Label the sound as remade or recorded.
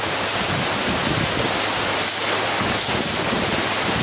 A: recorded